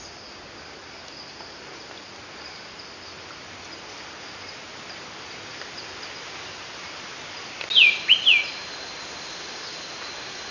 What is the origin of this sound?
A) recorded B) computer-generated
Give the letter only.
A